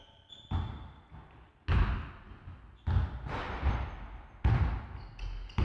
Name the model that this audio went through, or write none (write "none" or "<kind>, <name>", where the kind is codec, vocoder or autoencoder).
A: none